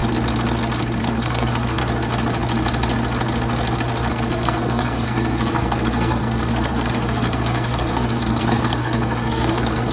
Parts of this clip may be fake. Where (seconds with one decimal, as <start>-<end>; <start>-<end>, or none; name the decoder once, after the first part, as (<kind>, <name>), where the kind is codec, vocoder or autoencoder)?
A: 1.0-1.8 (codec, SNAC); 4.1-9.9